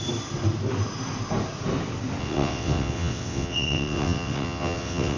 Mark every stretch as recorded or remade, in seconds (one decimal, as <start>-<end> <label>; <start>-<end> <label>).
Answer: 0.0-2.2 recorded; 2.2-5.2 remade

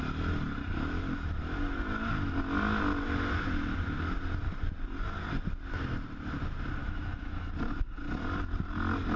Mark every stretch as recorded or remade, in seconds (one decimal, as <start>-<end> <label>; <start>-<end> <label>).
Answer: 0.0-6.8 recorded; 6.8-7.5 remade; 7.5-9.2 recorded

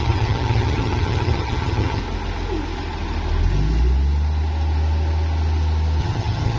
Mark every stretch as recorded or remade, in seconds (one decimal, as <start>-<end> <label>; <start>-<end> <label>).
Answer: 0.0-2.0 remade; 2.0-6.0 recorded; 6.0-6.6 remade

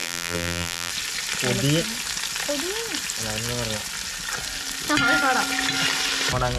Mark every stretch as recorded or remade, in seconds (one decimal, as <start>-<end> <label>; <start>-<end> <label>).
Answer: 0.0-0.9 remade; 0.9-6.6 recorded

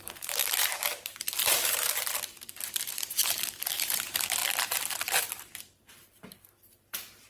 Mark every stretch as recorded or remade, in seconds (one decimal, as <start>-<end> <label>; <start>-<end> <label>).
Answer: 0.0-7.3 remade

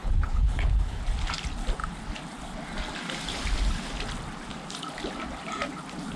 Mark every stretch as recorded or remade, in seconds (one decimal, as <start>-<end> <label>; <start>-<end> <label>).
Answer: 0.0-1.0 remade; 1.0-6.2 recorded